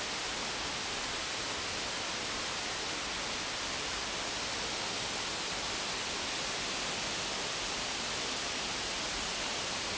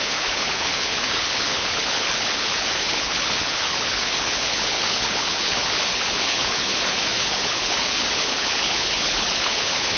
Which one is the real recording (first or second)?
first